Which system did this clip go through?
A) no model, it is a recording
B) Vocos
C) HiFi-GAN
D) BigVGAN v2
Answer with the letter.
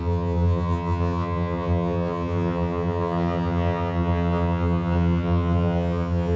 C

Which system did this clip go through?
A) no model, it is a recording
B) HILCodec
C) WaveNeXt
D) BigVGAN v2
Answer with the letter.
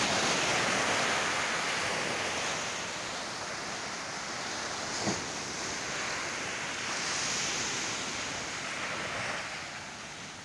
A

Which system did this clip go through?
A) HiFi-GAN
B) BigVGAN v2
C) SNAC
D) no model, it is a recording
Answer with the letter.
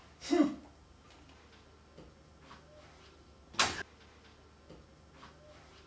D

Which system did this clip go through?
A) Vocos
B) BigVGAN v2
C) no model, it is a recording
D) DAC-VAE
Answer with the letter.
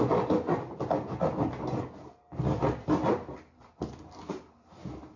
C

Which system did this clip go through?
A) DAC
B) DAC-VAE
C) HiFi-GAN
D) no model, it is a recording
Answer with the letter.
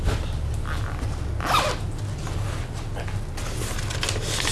D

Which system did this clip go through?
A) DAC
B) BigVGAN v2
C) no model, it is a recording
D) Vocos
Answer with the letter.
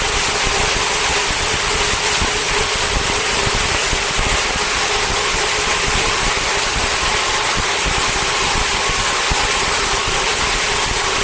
C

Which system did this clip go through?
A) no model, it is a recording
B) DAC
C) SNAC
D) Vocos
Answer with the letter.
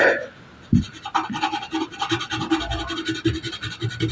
A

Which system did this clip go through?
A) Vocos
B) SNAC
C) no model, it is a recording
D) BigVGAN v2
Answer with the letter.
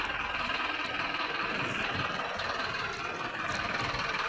D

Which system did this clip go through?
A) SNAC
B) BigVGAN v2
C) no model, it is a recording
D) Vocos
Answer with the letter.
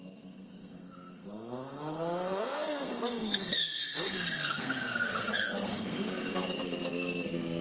A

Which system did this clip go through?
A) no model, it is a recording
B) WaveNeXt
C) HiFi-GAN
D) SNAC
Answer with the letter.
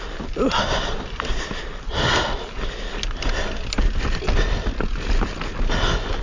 A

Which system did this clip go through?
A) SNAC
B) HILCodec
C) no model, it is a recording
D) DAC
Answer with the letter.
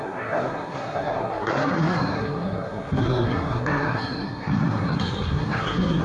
A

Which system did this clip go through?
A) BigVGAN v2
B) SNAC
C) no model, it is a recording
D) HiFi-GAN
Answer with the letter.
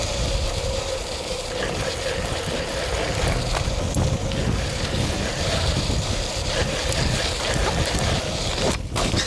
C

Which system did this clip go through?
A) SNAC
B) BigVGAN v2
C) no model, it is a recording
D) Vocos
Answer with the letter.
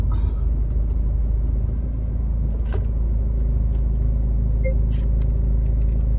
C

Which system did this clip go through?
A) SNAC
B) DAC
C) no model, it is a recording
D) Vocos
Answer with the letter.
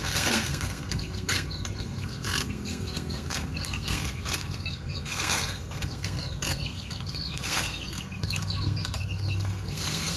A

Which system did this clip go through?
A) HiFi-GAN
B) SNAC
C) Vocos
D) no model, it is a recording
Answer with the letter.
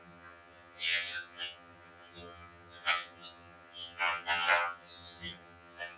A